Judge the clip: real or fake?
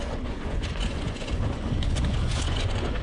fake